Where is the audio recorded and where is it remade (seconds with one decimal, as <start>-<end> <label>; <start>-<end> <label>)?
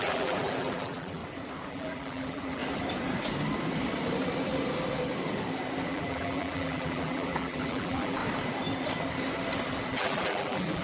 0.0-1.2 remade; 1.2-1.7 recorded; 1.7-2.6 remade; 2.6-5.9 recorded; 5.9-8.2 remade; 8.2-9.9 recorded; 9.9-10.8 remade